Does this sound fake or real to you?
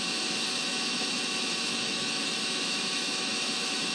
fake